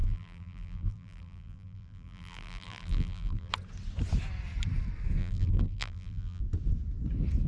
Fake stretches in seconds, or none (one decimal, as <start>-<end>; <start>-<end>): 0.0-3.5; 5.2-6.4